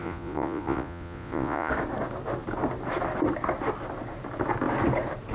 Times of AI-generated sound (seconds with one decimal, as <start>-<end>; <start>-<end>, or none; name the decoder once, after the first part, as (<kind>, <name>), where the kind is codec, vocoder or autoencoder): 0.0-1.7 (vocoder, Vocos)